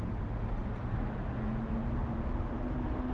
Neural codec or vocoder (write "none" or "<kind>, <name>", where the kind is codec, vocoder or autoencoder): none